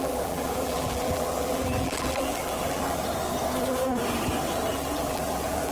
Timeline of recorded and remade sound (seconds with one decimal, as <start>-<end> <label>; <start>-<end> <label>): 0.0-3.0 remade; 3.0-4.7 recorded; 4.7-5.7 remade